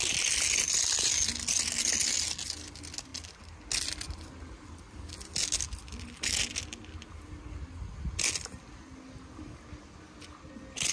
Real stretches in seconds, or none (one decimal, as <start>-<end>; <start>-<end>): 0.0-10.9